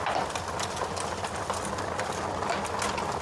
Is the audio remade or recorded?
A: recorded